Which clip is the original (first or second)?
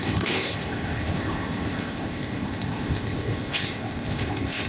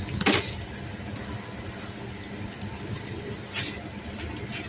second